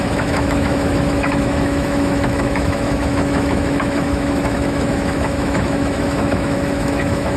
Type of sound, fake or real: fake